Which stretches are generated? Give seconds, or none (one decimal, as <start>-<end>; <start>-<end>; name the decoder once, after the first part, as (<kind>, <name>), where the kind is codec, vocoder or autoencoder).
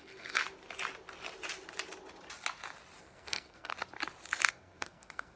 0.0-0.4 (codec, SNAC); 3.0-3.7; 4.5-5.4